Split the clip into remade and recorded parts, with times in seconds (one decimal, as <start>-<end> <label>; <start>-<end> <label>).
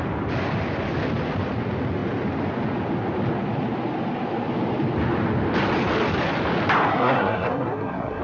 0.0-6.9 recorded; 6.9-8.2 remade